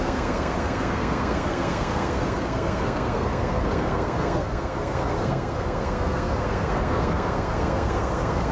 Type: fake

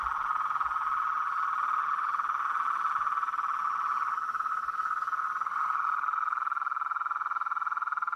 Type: real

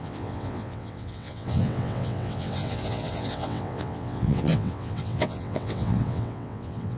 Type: fake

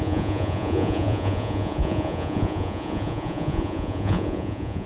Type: fake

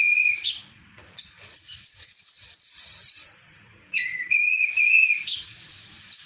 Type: fake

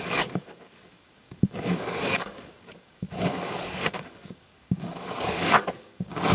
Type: fake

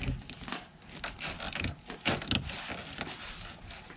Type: real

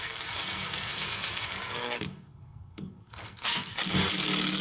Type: fake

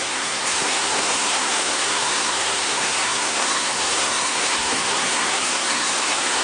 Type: fake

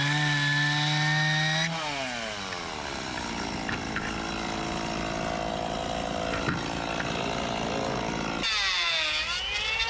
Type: real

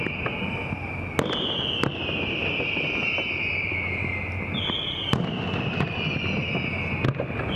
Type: real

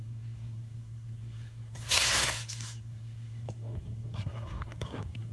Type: fake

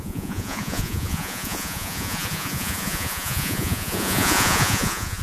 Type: fake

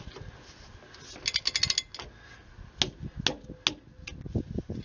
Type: real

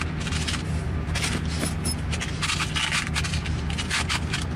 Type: real